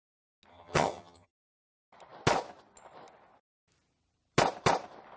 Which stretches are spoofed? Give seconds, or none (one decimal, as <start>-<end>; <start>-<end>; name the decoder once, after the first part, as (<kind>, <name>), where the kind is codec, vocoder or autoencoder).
0.5-1.3 (vocoder, HiFi-GAN)